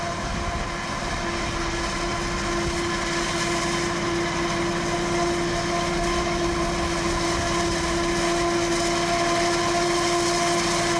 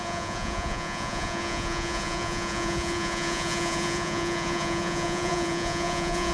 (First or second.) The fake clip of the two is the second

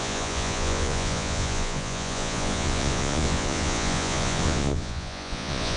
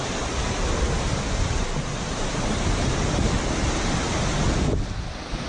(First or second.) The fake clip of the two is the first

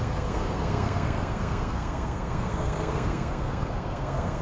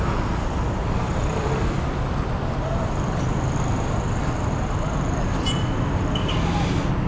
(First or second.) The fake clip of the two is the first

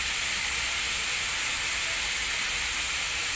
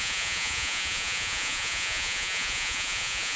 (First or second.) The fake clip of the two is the second